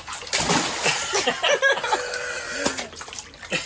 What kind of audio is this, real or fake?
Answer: real